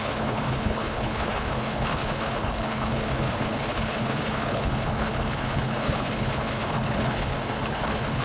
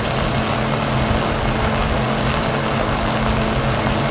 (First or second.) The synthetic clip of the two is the first